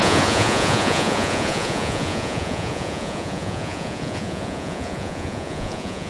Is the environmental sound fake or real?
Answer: fake